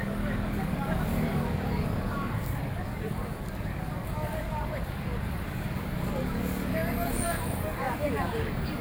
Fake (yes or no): yes